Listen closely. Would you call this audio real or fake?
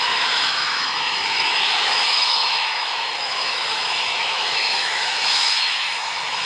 fake